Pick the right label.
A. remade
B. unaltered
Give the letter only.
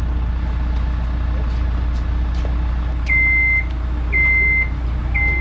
B